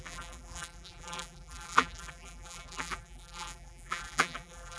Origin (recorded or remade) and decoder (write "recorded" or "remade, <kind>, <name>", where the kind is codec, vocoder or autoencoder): remade, vocoder, BigVGAN v2